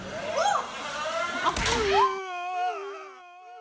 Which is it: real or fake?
real